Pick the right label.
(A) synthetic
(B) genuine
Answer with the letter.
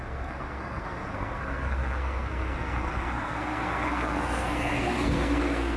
A